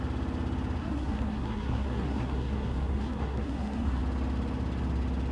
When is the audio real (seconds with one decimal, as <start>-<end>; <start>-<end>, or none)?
0.0-0.8; 4.0-5.3